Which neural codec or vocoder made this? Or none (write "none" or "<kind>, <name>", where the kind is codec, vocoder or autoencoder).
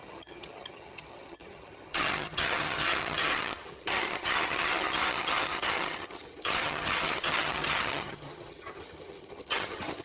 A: vocoder, HiFi-GAN